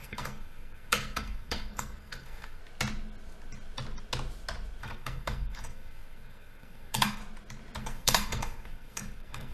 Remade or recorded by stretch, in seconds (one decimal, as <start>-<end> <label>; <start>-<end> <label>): 0.0-2.6 remade; 2.6-4.8 recorded; 4.8-7.2 remade; 7.2-7.8 recorded; 7.8-9.5 remade